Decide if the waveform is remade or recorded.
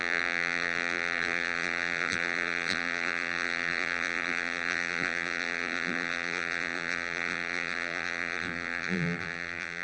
remade